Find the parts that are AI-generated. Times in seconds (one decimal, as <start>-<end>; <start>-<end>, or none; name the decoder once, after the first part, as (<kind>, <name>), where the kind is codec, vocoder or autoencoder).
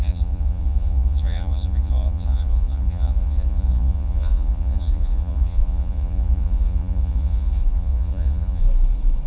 0.0-8.6 (vocoder, Vocos)